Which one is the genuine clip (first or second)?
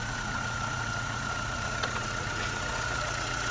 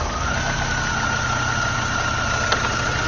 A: second